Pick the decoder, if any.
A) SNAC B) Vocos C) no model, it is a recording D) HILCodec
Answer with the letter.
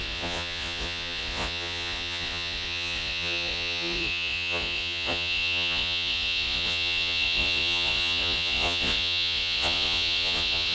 B